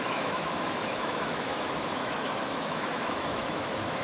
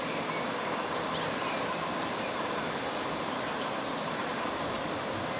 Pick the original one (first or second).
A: second